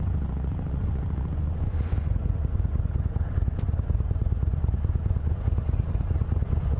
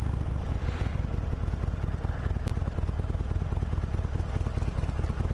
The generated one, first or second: first